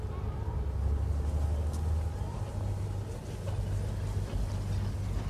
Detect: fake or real real